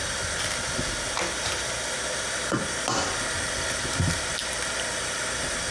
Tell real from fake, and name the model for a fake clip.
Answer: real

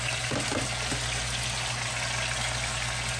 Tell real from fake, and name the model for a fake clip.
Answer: real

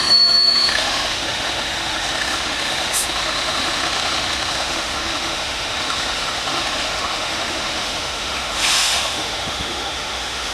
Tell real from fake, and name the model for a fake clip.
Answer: fake, autoencoder, DAC-VAE